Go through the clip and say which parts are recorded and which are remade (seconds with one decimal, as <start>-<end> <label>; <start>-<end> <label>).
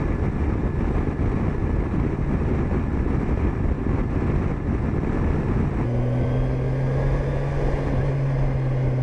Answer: 0.0-9.0 recorded